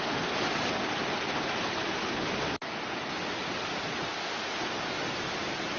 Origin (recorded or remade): recorded